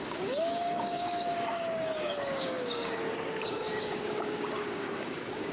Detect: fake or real fake